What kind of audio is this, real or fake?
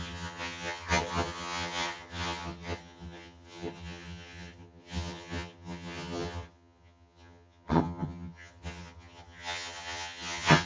fake